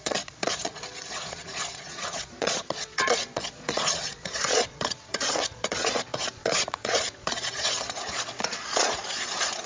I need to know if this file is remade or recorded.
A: remade